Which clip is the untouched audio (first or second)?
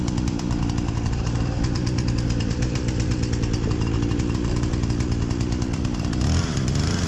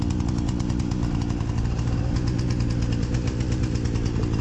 second